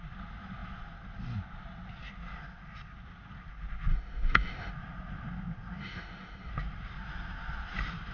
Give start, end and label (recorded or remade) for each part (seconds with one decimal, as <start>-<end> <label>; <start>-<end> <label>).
0.0-3.9 recorded; 3.9-4.7 remade; 4.7-5.8 recorded; 5.8-6.5 remade; 6.5-8.1 recorded